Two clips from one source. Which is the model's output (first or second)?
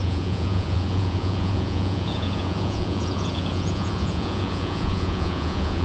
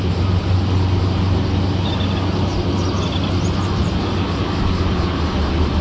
first